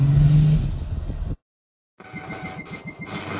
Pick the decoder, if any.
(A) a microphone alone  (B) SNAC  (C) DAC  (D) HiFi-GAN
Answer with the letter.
A